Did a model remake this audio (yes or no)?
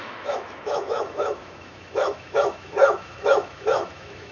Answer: yes